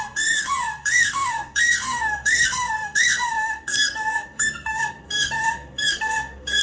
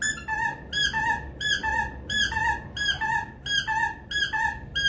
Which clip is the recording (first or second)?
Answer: second